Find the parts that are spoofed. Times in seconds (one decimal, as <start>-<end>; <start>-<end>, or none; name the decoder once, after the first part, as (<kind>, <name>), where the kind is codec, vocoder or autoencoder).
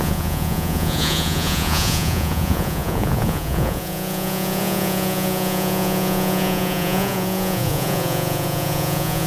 0.0-9.3 (vocoder, Vocos)